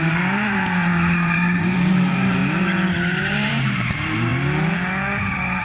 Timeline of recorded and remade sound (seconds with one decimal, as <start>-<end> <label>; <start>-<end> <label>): 0.0-2.4 remade; 2.4-3.2 recorded; 3.2-4.3 remade; 4.3-5.6 recorded